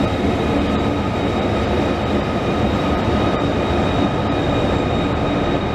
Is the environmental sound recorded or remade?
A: recorded